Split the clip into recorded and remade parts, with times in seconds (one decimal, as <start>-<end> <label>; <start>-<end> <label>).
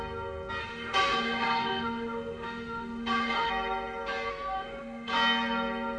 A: 0.0-0.6 recorded; 0.6-3.5 remade; 3.5-4.3 recorded; 4.3-5.1 remade; 5.1-6.0 recorded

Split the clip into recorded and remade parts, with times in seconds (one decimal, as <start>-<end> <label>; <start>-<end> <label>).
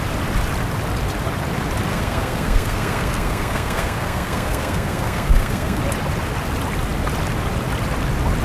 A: 0.0-1.9 recorded; 1.9-5.8 remade; 5.8-8.4 recorded